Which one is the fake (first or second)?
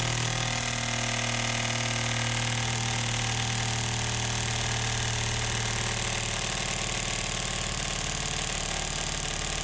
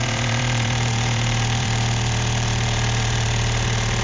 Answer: second